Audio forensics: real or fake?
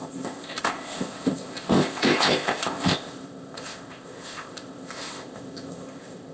fake